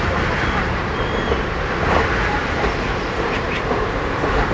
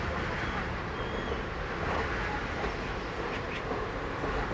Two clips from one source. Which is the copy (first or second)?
first